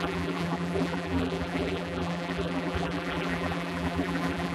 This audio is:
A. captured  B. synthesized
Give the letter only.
B